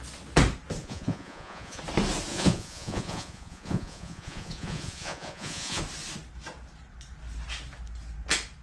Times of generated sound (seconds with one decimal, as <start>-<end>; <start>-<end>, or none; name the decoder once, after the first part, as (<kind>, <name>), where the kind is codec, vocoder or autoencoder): 0.8-1.8 (vocoder, Vocos); 2.3-5.8